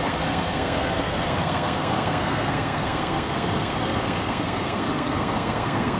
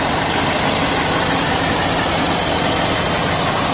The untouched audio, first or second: second